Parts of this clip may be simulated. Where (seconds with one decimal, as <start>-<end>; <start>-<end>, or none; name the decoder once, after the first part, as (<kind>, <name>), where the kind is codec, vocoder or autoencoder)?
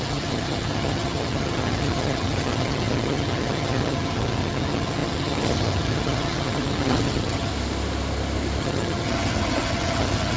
0.0-7.5 (vocoder, HiFi-GAN); 8.6-10.4